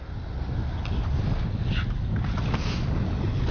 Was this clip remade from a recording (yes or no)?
no